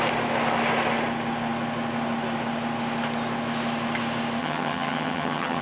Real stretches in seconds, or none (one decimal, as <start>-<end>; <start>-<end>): 0.0-4.4